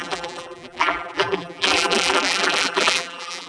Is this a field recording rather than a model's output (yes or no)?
no